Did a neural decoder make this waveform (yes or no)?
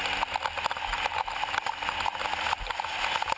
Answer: no